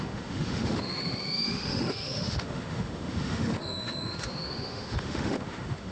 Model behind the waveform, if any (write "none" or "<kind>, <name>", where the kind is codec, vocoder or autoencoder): autoencoder, DAC-VAE